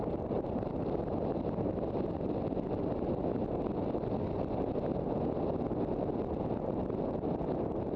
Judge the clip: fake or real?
real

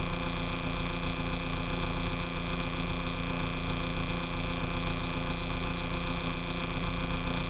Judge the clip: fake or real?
fake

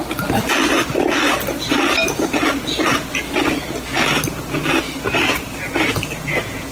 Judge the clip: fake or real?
real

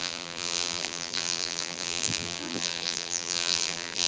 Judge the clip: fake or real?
fake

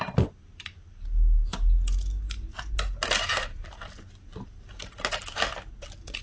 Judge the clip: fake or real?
real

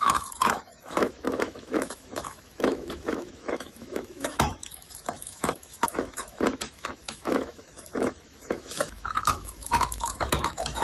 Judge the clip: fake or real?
fake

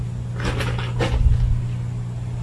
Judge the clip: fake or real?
real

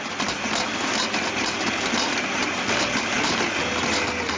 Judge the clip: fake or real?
real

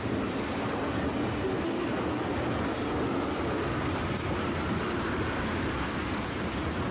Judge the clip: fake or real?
real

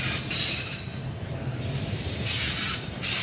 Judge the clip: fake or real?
fake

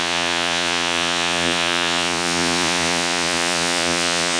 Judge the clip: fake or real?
fake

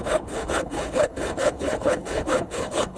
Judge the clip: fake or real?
fake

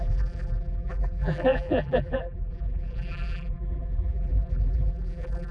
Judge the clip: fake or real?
fake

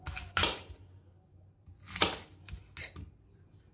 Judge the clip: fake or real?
real